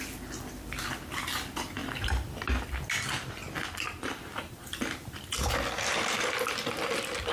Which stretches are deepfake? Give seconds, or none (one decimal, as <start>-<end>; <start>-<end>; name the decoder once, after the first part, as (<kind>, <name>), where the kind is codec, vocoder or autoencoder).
1.8-5.2 (vocoder, BigVGAN v2)